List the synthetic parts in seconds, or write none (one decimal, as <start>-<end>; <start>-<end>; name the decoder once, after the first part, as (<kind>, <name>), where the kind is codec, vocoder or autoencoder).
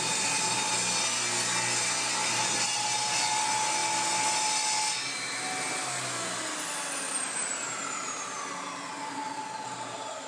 none